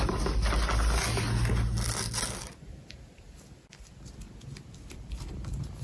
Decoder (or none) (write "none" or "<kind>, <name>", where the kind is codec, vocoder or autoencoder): none